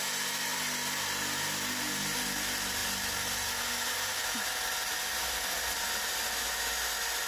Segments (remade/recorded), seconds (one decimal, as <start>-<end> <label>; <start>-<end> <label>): 0.0-7.3 recorded

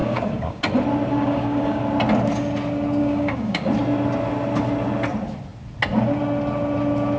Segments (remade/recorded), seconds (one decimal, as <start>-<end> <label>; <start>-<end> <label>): 0.0-0.6 remade; 0.6-1.1 recorded; 1.1-1.8 remade; 1.8-3.0 recorded; 3.0-3.7 remade; 3.7-7.2 recorded

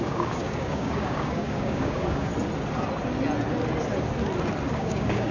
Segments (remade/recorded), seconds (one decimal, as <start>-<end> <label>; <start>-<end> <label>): 0.0-2.3 remade; 2.3-4.7 recorded; 4.7-5.3 remade

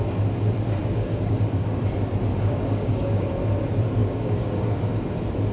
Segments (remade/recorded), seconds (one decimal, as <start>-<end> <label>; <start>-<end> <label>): 0.0-0.8 recorded; 0.8-1.8 remade; 1.8-2.3 recorded; 2.3-3.3 remade; 3.3-4.0 recorded; 4.0-4.8 remade; 4.8-5.5 recorded